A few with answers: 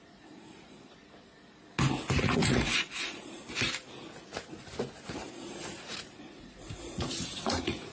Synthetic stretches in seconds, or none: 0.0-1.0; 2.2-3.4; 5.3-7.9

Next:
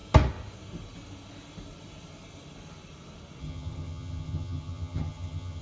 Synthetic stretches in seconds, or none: 3.4-5.6

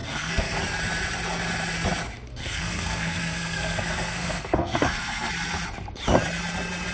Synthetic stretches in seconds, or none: 0.0-0.6; 2.3-5.3

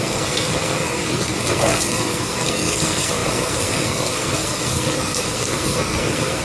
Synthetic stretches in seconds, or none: 0.0-6.4

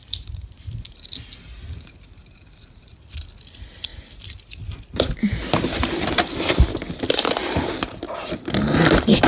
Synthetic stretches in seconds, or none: 0.0-0.7; 3.9-6.5